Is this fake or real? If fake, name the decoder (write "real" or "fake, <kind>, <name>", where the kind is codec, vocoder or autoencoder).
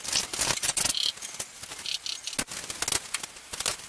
real